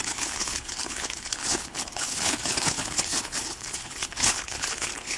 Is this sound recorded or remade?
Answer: remade